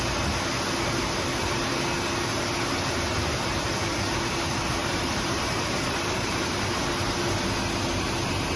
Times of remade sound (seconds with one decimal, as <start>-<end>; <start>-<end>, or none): 4.8-6.5